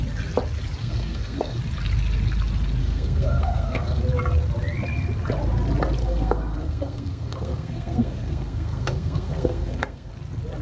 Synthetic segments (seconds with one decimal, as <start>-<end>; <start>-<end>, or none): 0.8-1.6; 2.8-4.0; 6.0-10.1